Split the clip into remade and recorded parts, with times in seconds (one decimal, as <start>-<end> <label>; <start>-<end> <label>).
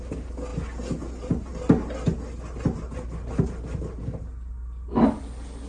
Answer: 0.0-5.7 recorded